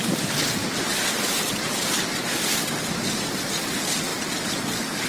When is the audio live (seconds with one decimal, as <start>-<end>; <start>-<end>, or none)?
0.0-0.6; 2.3-4.1

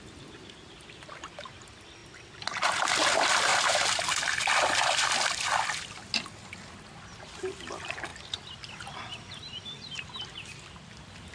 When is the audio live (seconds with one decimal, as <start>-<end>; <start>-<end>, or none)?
0.0-11.3

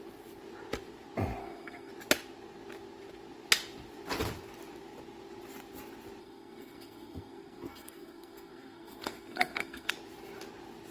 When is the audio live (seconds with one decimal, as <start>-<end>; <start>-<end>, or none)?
0.0-1.4; 1.9-6.2; 9.9-10.9

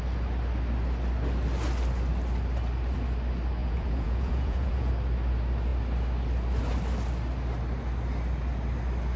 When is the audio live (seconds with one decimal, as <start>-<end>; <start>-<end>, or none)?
0.0-3.6; 4.9-9.2